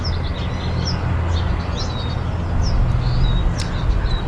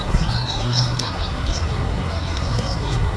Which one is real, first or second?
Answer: first